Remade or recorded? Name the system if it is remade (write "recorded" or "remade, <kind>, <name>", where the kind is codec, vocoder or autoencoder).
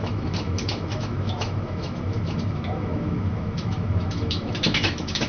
remade, autoencoder, DAC-VAE